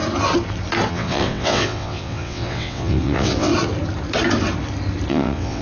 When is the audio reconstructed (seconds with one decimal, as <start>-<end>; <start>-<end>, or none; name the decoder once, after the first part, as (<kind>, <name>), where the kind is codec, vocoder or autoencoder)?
0.9-3.5 (vocoder, WaveNeXt); 5.1-5.6